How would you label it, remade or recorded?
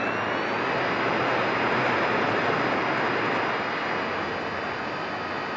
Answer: recorded